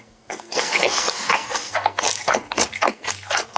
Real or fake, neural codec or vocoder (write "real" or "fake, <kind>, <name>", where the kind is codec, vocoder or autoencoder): fake, codec, SNAC